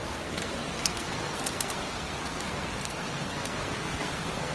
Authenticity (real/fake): fake